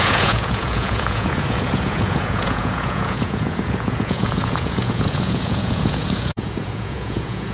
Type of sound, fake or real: fake